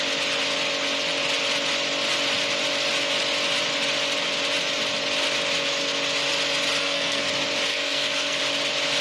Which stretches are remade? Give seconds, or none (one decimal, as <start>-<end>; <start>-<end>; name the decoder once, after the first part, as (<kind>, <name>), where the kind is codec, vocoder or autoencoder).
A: 6.8-7.3 (codec, SNAC); 7.7-8.4